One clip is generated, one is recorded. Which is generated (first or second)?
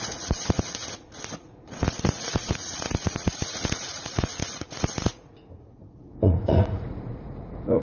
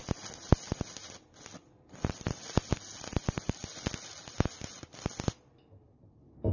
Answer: first